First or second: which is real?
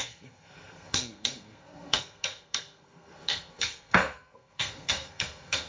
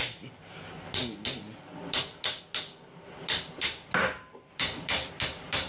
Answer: second